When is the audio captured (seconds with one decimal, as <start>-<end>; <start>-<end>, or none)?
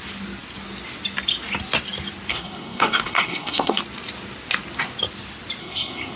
0.0-2.3; 3.8-5.6